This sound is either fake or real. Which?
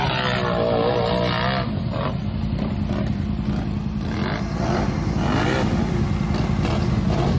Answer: real